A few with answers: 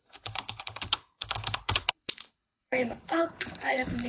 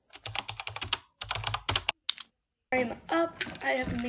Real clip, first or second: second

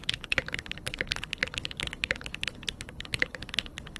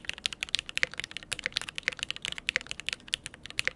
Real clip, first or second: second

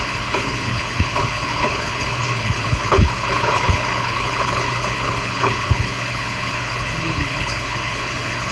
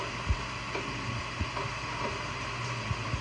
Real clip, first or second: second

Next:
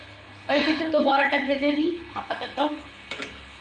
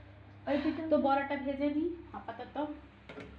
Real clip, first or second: second